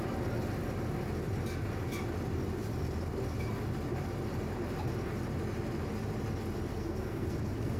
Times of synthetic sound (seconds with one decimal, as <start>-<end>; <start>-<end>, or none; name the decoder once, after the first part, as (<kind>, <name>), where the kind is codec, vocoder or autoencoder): 6.7-7.8 (codec, SNAC)